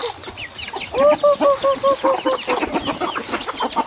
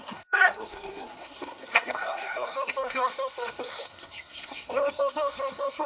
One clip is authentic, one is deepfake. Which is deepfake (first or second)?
second